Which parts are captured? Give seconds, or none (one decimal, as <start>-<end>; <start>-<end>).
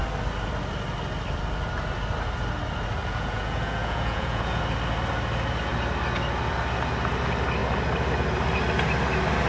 0.0-3.0; 4.6-9.5